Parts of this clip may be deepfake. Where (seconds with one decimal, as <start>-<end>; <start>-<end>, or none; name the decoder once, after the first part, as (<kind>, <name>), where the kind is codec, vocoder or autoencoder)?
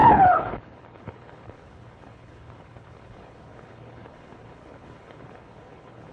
0.0-6.1 (codec, HILCodec)